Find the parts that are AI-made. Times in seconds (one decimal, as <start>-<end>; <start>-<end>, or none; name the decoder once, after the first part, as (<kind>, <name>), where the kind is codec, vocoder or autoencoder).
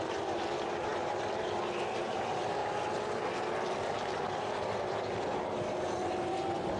0.0-2.6 (vocoder, BigVGAN v2)